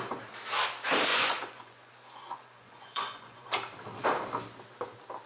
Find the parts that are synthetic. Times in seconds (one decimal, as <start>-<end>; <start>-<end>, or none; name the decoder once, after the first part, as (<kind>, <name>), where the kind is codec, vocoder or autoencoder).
1.1-3.5 (vocoder, Vocos)